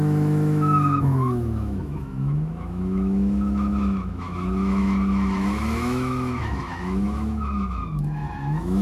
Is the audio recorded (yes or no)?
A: no